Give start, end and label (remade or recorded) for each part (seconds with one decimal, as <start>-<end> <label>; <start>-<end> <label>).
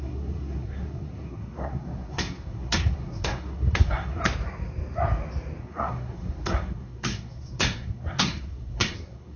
0.0-4.2 remade; 4.2-5.6 recorded; 5.6-9.4 remade